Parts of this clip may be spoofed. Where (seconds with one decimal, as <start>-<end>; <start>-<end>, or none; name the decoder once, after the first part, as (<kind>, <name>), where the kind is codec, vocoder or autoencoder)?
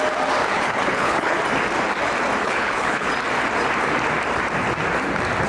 0.4-1.4 (codec, HILCodec); 2.4-3.1